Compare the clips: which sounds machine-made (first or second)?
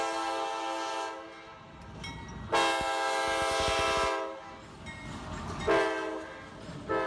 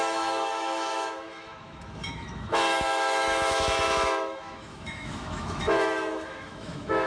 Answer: second